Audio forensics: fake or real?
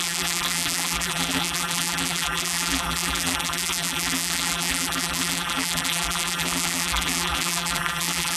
fake